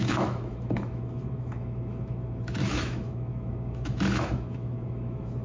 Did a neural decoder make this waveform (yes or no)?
yes